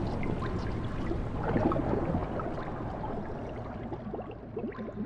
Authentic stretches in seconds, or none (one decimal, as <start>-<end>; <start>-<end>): 0.0-5.1